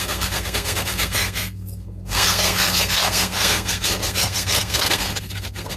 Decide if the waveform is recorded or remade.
remade